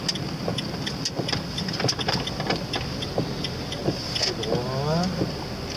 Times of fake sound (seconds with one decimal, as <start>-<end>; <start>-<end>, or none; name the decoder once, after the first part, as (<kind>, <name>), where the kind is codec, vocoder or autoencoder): none